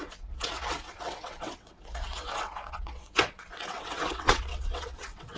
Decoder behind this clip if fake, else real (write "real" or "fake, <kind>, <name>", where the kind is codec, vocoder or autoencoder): fake, vocoder, WaveNeXt